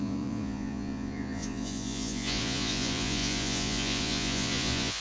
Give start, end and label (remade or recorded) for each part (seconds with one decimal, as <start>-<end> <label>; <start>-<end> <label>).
0.0-5.0 remade

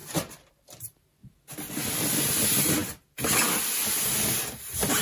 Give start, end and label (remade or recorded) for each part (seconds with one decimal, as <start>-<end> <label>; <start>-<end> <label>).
0.0-1.2 remade; 1.2-1.9 recorded; 1.9-5.0 remade